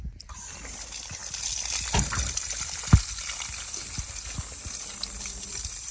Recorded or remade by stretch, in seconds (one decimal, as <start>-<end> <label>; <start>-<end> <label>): 0.0-5.9 recorded